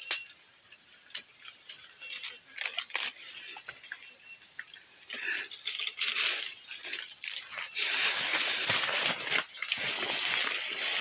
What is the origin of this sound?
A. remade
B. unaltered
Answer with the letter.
B